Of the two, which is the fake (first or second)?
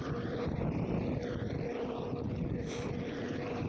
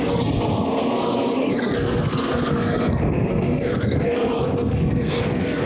second